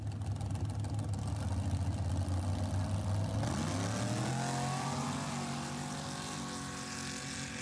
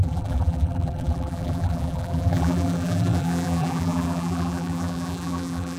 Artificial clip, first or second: second